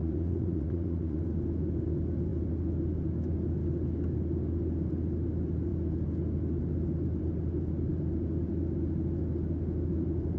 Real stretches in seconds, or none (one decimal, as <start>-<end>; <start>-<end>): 1.2-10.4